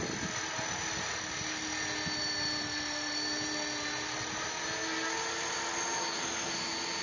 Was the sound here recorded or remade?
recorded